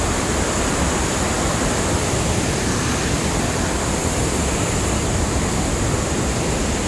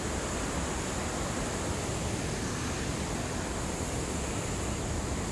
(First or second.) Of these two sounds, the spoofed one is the first